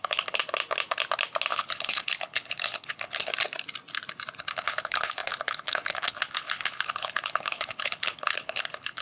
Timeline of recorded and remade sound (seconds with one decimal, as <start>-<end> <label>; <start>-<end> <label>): 0.0-0.4 remade; 0.4-1.5 recorded; 1.5-3.3 remade; 3.3-4.4 recorded; 4.4-9.0 remade